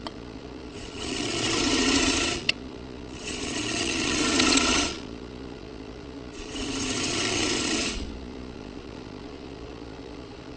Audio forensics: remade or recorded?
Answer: remade